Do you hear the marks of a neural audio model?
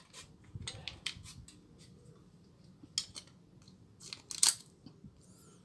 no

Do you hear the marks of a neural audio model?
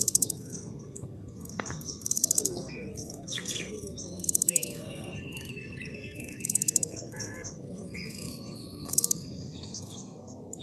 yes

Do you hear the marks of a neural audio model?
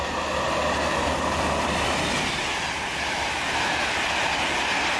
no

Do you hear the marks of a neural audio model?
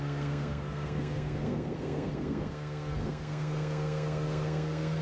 yes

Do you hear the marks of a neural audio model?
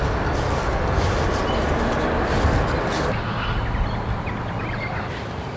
no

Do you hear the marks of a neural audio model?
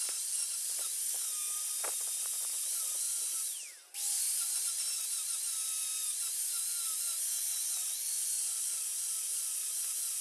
no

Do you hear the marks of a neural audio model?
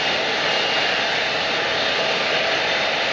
no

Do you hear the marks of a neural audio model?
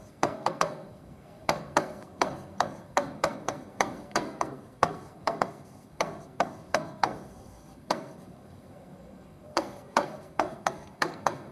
yes